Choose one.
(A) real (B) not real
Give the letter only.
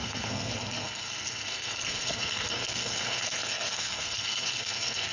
B